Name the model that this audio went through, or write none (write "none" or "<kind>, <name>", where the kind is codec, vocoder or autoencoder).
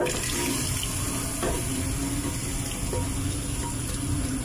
none